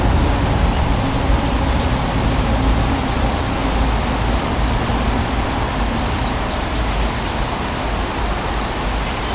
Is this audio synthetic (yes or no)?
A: no